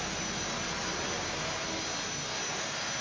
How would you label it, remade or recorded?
recorded